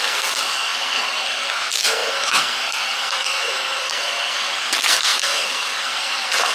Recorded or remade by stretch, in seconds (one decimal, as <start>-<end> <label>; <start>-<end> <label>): 0.0-6.5 remade